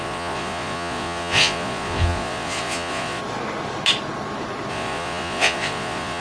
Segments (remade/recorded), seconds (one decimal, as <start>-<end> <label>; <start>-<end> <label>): 0.0-3.2 remade; 3.2-4.7 recorded; 4.7-6.2 remade

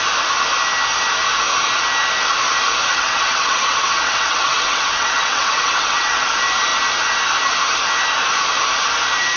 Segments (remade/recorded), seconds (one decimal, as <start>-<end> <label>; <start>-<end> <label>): 0.0-2.9 recorded; 2.9-6.2 remade; 6.2-9.4 recorded

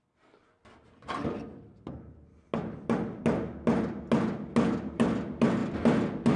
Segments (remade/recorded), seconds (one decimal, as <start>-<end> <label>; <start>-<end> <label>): 0.0-6.4 recorded

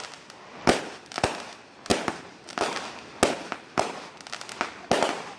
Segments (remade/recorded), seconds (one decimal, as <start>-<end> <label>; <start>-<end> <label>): 0.0-5.4 recorded